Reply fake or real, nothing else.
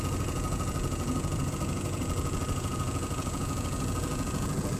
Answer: fake